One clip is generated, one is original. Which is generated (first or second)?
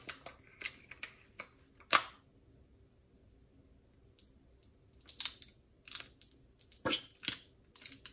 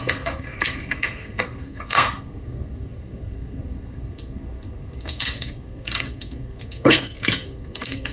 second